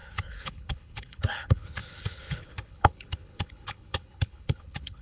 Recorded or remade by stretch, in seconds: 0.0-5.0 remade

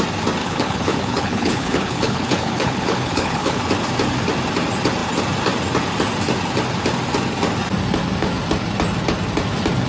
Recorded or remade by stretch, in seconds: 0.0-0.4 recorded; 0.4-3.6 remade; 3.6-9.9 recorded

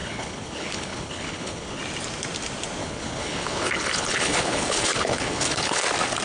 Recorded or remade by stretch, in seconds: 0.0-1.8 remade; 1.8-2.8 recorded; 2.8-5.8 remade; 5.8-6.2 recorded